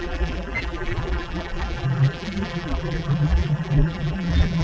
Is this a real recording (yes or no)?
no